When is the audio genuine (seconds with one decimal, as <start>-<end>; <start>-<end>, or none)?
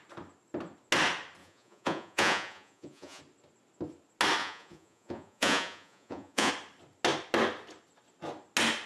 0.0-1.4; 3.2-4.4; 6.5-8.9